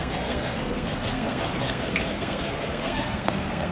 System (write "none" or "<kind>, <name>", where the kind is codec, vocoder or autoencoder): codec, SNAC